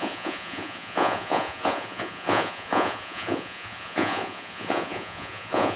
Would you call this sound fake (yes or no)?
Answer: yes